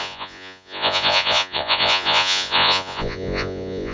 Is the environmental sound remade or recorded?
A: remade